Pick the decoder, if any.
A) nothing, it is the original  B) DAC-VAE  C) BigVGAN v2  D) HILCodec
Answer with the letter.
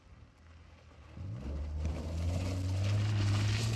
A